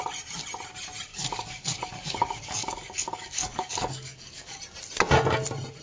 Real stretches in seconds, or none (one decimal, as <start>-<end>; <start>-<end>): 0.0-1.1; 4.6-5.8